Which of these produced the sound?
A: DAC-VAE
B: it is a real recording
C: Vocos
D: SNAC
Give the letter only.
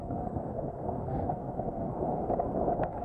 D